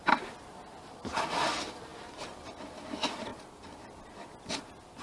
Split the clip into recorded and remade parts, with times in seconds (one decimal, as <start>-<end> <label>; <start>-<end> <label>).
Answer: 0.0-5.0 recorded